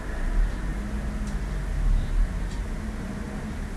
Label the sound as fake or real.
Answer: real